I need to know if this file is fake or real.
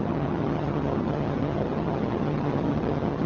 fake